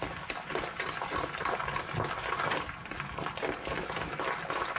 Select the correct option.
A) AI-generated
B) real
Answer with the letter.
B